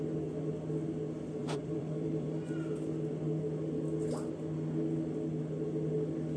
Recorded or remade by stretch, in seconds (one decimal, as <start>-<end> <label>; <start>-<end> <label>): 0.0-1.4 recorded; 1.4-2.5 remade; 2.5-6.4 recorded